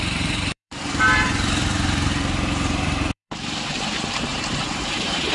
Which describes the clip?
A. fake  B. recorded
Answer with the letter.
A